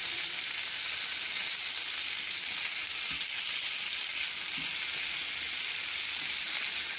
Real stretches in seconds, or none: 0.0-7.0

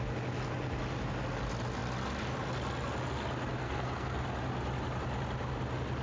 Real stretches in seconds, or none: 0.0-3.6; 4.2-6.0

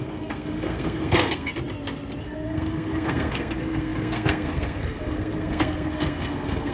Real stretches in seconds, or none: 1.5-2.2

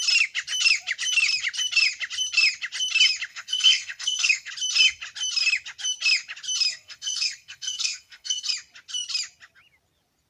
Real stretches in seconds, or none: 0.0-3.3; 4.5-6.7; 8.5-10.3

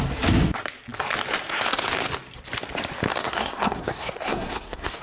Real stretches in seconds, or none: 0.0-3.1

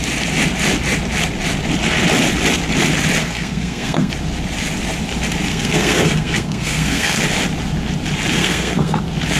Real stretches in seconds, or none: 0.0-3.2; 4.1-5.5; 7.2-8.4; 9.0-9.4

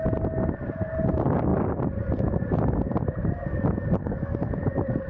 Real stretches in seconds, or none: 0.0-4.0; 4.5-5.1